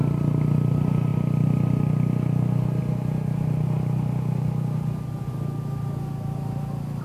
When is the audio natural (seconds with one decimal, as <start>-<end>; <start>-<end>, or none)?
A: 0.0-7.0